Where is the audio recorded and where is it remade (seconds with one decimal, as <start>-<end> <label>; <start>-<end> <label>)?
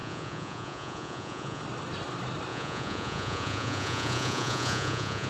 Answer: 0.0-1.6 remade; 1.6-2.5 recorded; 2.5-5.3 remade